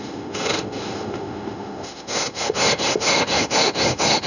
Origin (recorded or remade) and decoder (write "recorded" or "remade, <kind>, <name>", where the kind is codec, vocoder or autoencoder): remade, autoencoder, DAC-VAE